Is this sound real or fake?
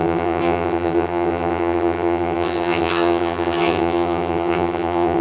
fake